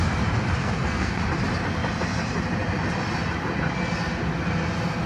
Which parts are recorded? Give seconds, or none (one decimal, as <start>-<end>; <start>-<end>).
0.0-0.6; 1.2-5.1